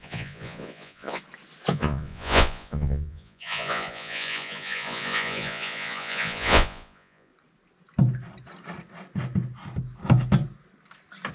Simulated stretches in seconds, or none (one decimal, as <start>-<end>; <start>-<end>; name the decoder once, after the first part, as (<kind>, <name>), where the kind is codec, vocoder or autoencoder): 0.0-1.2 (vocoder, Vocos); 1.7-7.3